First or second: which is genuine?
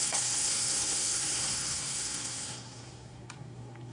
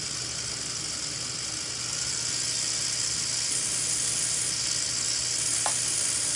second